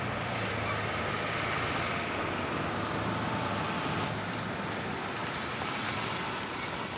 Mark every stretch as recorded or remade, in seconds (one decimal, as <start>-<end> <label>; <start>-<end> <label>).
0.0-7.0 remade